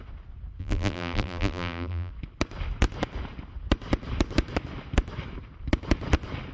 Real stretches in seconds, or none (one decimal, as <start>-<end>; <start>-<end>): 0.0-0.6; 2.1-6.5